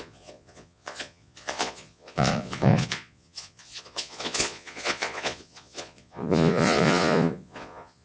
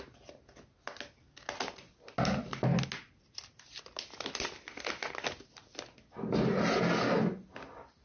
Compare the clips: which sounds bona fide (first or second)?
second